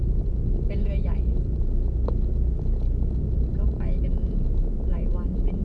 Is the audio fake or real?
real